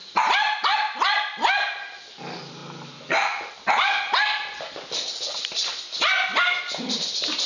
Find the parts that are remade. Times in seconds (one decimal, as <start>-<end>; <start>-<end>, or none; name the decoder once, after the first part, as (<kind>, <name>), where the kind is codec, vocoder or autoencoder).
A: none